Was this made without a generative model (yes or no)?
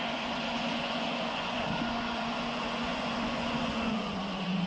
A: no